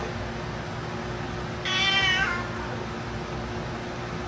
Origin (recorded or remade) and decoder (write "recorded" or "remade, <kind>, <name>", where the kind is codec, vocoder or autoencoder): recorded